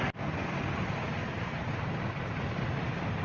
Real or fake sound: real